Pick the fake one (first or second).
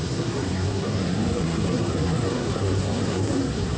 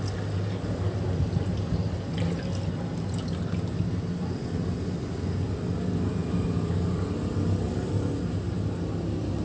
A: first